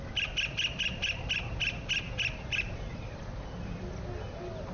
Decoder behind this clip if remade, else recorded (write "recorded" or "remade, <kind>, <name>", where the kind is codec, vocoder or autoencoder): recorded